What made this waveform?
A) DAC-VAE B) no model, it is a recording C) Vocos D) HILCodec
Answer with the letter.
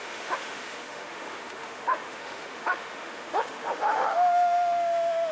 A